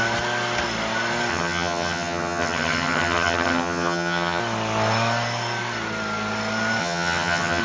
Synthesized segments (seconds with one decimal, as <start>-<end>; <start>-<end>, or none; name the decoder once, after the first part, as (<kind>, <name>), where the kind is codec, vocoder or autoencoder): 1.3-4.4 (vocoder, HiFi-GAN); 6.8-7.6